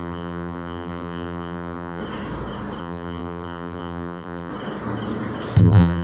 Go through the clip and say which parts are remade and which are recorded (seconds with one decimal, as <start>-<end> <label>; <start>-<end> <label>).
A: 0.0-2.0 remade; 2.0-2.8 recorded; 2.8-4.5 remade; 4.5-5.6 recorded; 5.6-6.0 remade